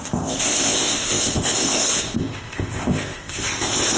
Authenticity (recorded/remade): remade